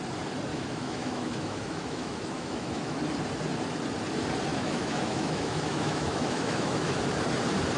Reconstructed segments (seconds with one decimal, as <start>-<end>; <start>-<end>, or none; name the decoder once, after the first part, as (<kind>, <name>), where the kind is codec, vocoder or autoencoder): 0.5-3.0 (autoencoder, DAC-VAE); 4.5-7.0